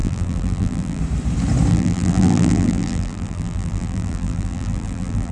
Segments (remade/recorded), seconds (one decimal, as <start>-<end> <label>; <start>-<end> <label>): 0.0-1.0 remade; 1.0-1.7 recorded; 1.7-5.3 remade

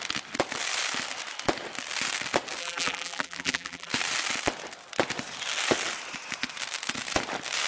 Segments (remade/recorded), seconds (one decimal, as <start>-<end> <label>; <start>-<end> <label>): 0.0-2.6 recorded; 2.6-3.9 remade; 3.9-7.7 recorded

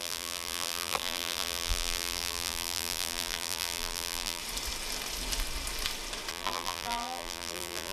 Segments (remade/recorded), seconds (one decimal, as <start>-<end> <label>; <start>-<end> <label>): 0.0-4.4 remade; 4.4-6.3 recorded; 6.3-7.9 remade

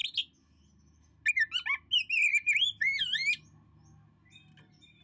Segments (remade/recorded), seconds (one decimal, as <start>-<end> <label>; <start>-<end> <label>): 0.0-5.0 recorded

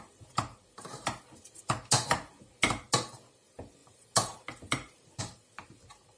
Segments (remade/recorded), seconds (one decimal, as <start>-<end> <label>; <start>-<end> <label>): 0.0-3.8 recorded; 3.8-5.2 remade; 5.2-6.2 recorded

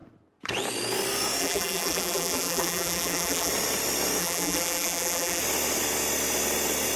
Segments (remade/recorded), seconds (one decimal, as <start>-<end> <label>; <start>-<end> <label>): 0.0-1.4 recorded; 1.4-3.5 remade; 3.5-4.2 recorded; 4.2-5.4 remade; 5.4-7.0 recorded